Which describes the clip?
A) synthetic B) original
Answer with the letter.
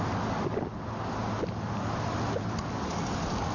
B